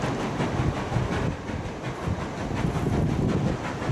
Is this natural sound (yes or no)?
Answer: yes